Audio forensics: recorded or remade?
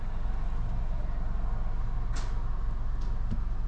recorded